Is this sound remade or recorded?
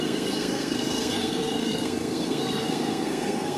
remade